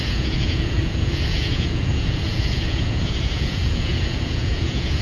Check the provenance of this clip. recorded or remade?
remade